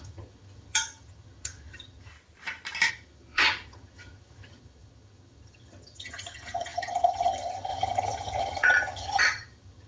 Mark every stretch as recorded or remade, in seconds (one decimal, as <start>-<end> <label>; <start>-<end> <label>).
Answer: 0.0-2.1 remade; 2.1-2.9 recorded; 2.9-9.9 remade